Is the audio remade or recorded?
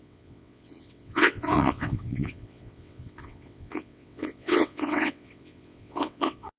remade